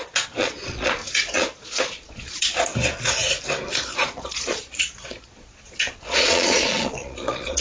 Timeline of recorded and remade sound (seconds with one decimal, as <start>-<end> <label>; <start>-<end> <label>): 0.0-2.7 remade; 2.7-3.7 recorded; 3.7-7.6 remade